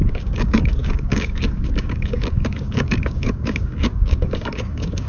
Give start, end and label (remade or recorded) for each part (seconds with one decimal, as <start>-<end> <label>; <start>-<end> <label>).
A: 0.0-5.1 remade